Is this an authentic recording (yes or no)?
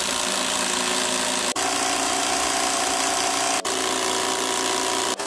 yes